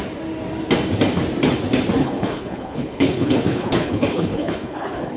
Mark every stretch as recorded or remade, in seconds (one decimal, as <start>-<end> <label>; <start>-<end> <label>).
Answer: 0.0-2.0 recorded; 2.0-5.2 remade